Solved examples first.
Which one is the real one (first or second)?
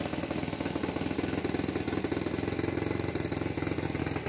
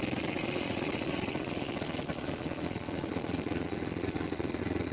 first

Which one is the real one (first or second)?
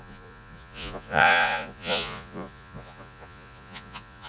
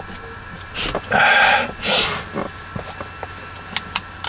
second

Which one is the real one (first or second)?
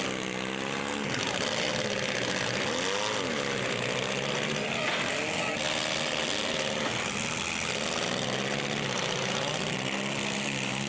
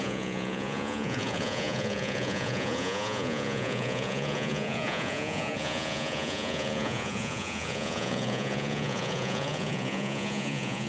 first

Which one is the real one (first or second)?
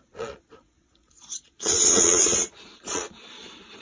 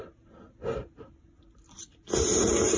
second